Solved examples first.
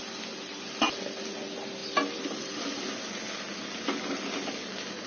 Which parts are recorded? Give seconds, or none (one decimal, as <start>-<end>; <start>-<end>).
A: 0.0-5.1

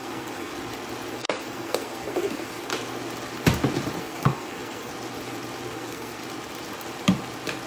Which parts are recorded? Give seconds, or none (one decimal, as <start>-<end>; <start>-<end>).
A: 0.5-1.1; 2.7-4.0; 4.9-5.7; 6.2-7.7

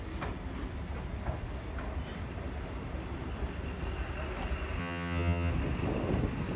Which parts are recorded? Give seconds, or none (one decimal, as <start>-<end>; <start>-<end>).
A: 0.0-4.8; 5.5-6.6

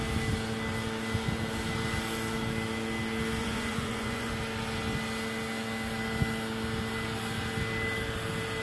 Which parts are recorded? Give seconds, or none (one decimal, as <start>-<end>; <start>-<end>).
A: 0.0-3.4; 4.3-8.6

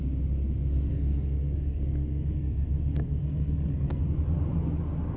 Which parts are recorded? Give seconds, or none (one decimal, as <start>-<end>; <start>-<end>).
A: 0.0-0.9; 4.0-5.2

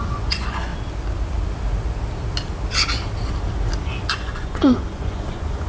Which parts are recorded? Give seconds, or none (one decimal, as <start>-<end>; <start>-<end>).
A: 0.7-4.1

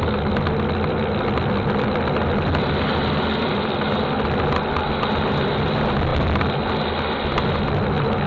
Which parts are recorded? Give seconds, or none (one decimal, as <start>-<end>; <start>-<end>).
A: 0.0-8.3